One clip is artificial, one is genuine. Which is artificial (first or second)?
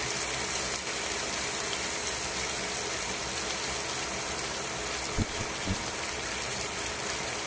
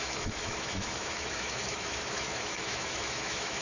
second